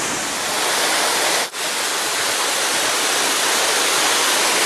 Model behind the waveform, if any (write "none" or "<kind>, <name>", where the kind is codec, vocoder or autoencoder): none